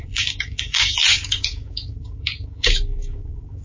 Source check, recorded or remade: remade